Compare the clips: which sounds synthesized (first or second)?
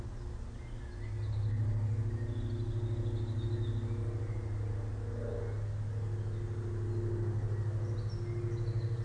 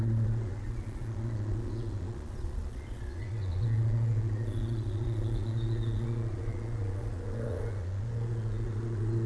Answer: second